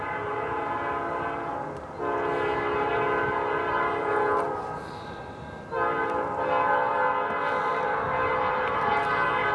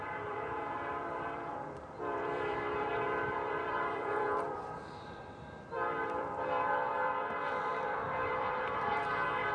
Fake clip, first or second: second